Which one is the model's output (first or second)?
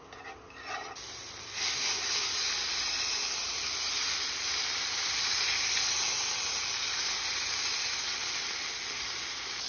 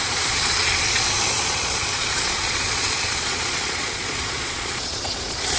second